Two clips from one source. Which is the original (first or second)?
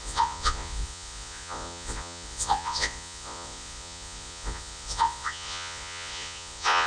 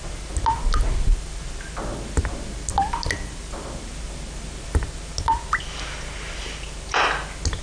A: second